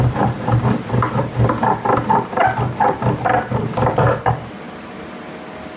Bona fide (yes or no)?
yes